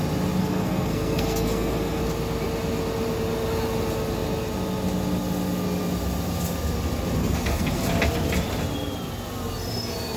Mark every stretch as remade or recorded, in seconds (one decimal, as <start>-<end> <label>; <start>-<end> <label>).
0.0-0.4 recorded; 0.4-2.0 remade; 2.0-7.2 recorded; 7.2-7.8 remade; 7.8-10.2 recorded